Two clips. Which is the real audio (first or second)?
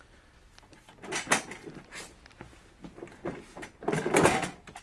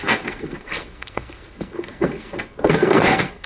first